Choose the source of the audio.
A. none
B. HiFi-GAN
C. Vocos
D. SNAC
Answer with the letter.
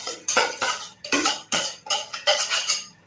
B